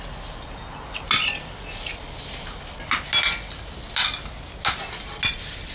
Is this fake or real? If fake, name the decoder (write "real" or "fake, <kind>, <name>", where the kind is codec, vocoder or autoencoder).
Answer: real